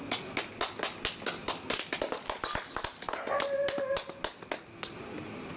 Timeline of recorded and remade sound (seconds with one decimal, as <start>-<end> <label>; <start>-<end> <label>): 0.0-5.6 recorded